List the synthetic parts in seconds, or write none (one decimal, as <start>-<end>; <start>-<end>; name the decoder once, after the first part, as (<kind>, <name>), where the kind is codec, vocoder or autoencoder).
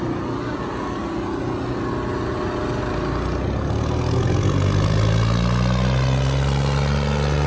none